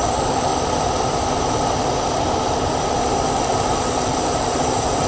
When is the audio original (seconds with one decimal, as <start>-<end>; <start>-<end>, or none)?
0.5-3.6